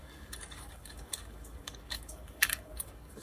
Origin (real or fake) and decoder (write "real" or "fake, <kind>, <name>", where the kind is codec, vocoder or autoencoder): fake, codec, DAC